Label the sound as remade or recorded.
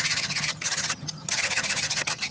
remade